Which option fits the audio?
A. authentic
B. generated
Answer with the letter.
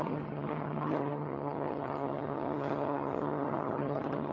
B